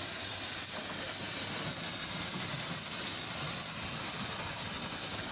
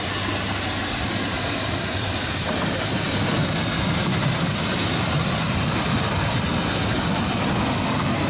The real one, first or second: first